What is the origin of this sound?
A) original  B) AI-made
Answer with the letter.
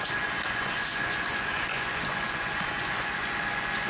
B